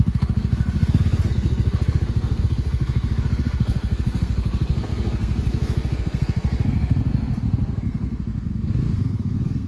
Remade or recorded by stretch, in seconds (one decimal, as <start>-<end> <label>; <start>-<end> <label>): 0.0-9.7 remade